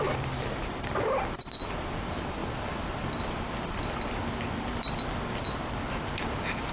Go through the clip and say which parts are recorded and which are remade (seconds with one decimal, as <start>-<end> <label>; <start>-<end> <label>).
0.0-6.7 recorded